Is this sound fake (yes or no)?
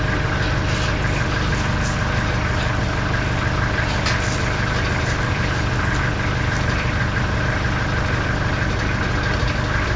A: no